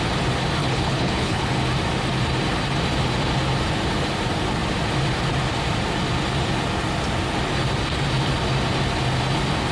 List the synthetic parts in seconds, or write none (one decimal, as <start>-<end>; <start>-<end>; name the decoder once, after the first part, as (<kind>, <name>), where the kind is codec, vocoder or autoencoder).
0.6-1.5 (codec, HILCodec)